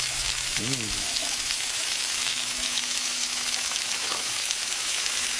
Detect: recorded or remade remade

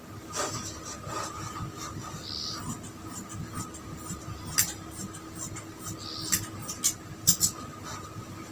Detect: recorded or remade recorded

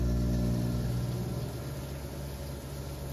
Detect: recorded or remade recorded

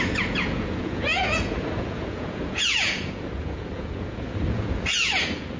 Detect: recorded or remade remade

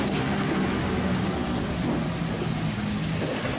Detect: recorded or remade recorded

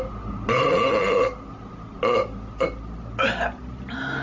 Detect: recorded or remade recorded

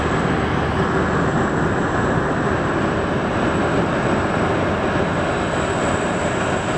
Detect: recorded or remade recorded